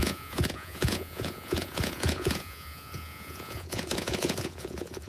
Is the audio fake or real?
fake